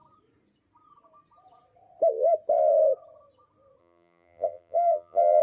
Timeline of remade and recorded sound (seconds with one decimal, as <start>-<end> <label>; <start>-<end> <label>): 0.0-3.8 recorded; 3.8-5.4 remade